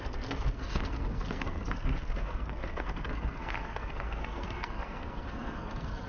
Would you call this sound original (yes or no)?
no